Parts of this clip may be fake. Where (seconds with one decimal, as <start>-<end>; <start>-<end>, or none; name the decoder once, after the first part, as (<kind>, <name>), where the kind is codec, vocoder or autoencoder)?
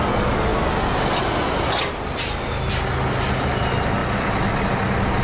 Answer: none